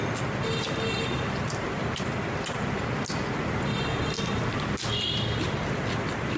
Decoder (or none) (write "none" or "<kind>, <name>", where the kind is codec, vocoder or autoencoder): none